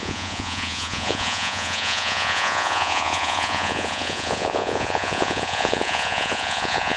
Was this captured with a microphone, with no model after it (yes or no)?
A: no